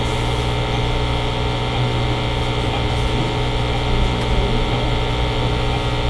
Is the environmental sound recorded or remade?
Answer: recorded